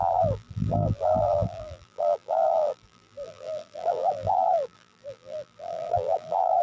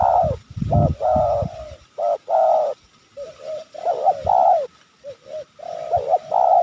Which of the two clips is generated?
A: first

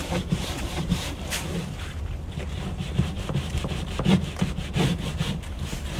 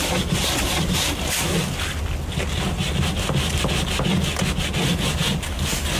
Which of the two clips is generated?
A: first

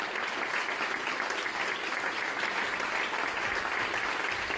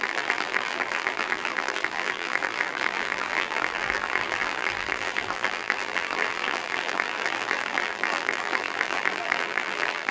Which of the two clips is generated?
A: second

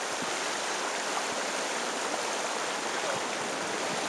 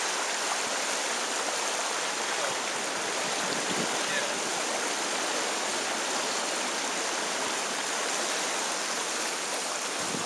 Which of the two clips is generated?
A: first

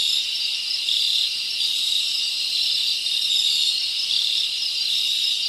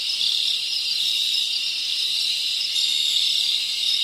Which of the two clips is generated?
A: second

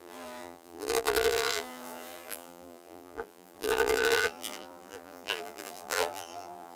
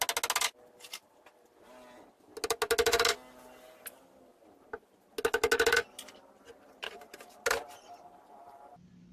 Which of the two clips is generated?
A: first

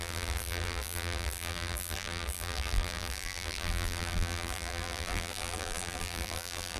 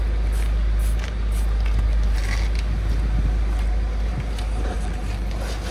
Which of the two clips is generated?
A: first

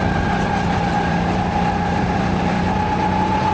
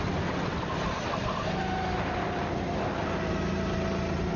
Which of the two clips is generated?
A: first